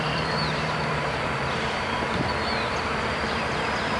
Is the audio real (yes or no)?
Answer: no